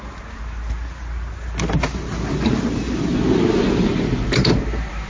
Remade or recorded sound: recorded